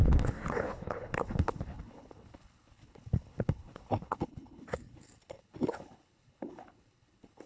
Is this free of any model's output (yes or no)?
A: no